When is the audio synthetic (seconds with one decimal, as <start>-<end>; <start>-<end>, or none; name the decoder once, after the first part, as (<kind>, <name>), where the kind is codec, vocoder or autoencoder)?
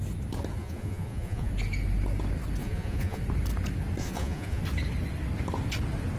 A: 0.6-1.5 (vocoder, Vocos); 2.6-3.2; 4.0-4.6